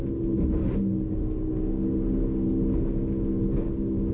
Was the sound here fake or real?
real